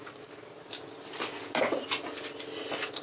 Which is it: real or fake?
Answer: real